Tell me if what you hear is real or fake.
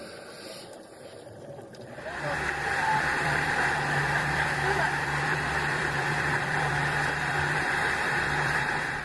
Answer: fake